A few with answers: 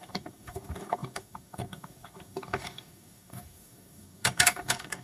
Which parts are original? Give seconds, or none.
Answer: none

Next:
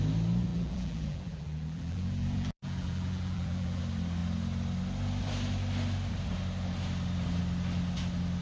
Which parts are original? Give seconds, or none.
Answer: 0.0-0.5; 3.8-8.4